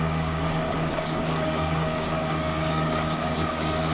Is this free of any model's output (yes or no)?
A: no